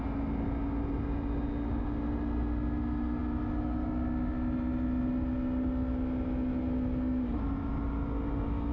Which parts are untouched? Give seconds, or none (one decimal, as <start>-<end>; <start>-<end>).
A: 0.0-8.7